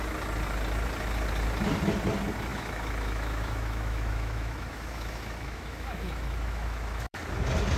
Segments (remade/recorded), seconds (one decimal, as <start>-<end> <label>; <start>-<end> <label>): 0.0-2.5 recorded; 2.5-7.2 remade; 7.2-7.8 recorded

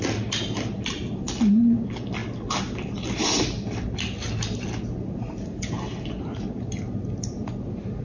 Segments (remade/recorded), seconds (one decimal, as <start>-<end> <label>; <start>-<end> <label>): 0.0-8.0 recorded